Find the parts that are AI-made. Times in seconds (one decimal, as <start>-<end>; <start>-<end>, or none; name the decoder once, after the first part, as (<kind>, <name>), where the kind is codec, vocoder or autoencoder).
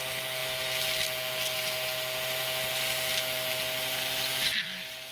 none